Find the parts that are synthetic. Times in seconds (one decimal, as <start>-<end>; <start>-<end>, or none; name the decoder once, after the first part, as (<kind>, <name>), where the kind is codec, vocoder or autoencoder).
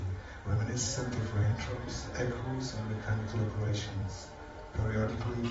0.0-1.9 (vocoder, BigVGAN v2); 3.5-5.5